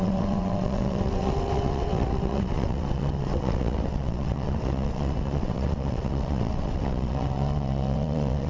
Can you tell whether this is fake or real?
fake